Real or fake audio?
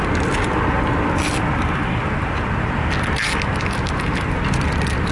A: real